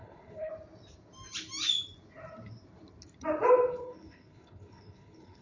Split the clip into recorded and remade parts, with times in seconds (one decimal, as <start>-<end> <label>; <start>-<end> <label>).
0.0-0.5 remade; 0.5-3.7 recorded; 3.7-5.4 remade